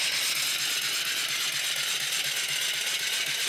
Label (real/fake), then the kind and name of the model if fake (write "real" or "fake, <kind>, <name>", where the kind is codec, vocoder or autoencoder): real